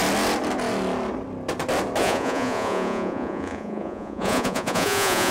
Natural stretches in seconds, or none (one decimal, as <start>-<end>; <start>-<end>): 0.0-2.0